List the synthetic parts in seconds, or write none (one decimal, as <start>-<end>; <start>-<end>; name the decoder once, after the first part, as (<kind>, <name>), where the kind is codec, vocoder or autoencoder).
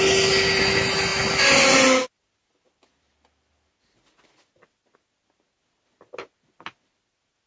none